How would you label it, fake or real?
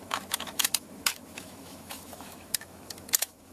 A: fake